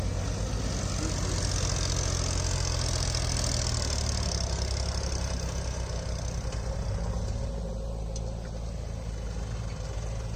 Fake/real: real